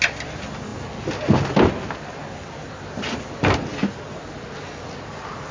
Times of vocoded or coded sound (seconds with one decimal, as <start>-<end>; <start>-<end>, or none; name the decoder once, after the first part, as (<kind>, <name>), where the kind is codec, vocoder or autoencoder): none